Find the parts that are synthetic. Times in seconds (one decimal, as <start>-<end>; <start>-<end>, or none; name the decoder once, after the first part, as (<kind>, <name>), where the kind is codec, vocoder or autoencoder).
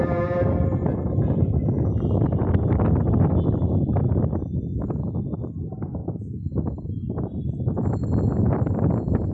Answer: none